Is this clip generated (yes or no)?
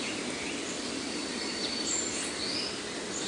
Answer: no